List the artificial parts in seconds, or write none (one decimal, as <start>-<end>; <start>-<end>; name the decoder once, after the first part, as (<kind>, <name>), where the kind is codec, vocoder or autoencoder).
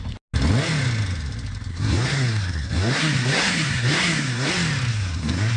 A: 1.7-4.5 (codec, SNAC); 4.9-5.6